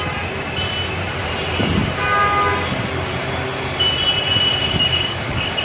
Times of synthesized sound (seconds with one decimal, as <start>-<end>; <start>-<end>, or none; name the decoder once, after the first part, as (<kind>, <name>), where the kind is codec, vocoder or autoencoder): 4.6-5.6 (codec, DAC)